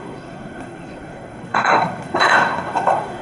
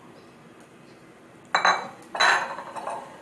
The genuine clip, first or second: second